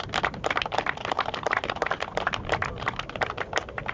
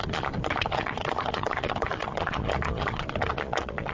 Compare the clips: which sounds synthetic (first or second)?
second